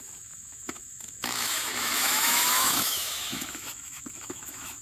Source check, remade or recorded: remade